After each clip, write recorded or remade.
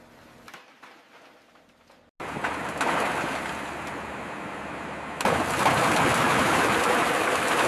recorded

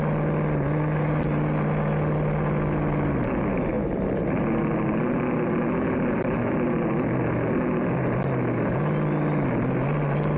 recorded